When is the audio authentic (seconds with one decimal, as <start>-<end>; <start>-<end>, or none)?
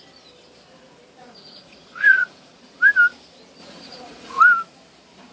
0.0-1.2; 2.6-3.6; 4.4-5.3